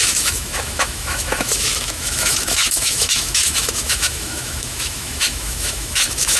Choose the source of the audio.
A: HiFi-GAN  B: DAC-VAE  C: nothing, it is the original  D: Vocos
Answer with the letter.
B